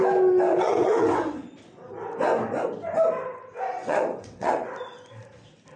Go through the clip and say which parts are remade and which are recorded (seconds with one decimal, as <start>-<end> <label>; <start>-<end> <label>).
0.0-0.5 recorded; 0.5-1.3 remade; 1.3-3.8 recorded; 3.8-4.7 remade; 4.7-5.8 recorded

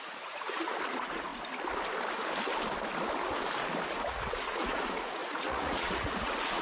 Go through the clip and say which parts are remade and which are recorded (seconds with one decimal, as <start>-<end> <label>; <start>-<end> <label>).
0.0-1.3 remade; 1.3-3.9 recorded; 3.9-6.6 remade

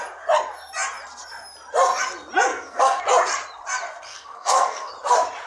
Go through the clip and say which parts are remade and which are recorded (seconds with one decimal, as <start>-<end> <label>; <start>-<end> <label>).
0.0-2.5 recorded; 2.5-3.0 remade; 3.0-4.1 recorded; 4.1-4.9 remade; 4.9-5.5 recorded

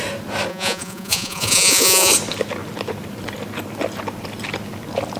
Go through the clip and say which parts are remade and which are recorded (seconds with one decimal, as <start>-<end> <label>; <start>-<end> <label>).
0.0-0.5 recorded; 0.5-2.1 remade; 2.1-5.2 recorded

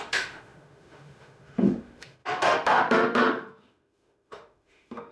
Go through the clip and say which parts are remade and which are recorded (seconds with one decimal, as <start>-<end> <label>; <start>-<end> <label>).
0.0-5.1 remade

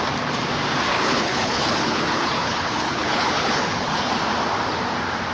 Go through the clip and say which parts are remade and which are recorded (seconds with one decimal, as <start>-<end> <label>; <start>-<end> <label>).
0.0-0.9 recorded; 0.9-4.1 remade; 4.1-5.3 recorded